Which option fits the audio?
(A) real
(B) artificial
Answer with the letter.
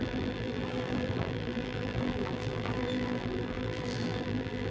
B